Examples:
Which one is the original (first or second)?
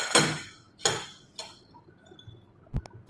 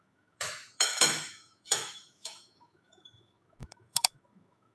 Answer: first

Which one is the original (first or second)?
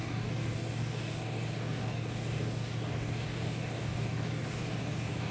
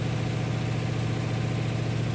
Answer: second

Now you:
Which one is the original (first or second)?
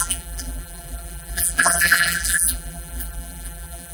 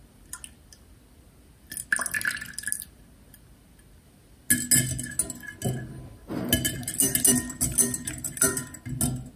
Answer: second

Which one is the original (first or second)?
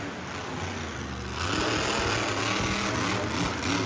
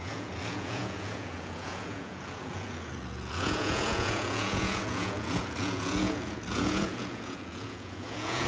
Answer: first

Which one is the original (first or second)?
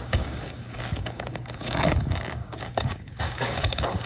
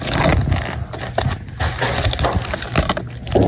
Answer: second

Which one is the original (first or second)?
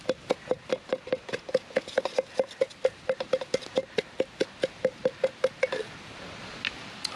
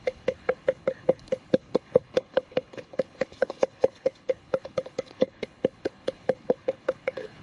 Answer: first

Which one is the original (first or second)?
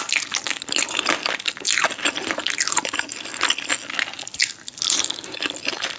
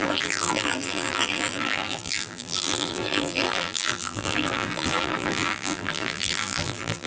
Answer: first